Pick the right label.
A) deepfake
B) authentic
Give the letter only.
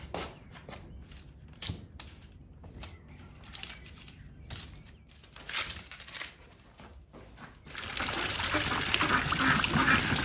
B